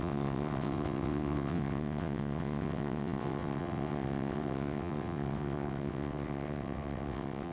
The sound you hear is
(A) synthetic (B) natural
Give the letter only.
A